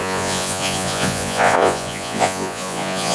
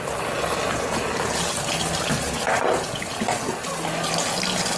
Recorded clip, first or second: second